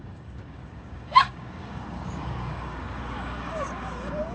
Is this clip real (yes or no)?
no